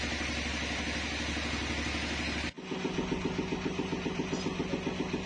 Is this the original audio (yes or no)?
yes